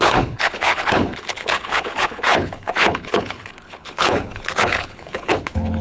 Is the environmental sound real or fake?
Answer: fake